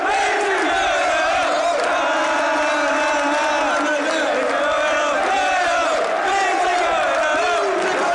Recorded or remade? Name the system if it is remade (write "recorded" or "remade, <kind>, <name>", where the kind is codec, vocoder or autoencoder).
recorded